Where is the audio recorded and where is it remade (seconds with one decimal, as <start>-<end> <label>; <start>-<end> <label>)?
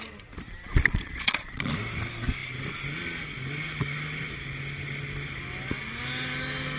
0.0-0.8 recorded; 0.8-1.7 remade; 1.7-6.8 recorded